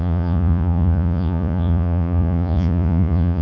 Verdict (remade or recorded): remade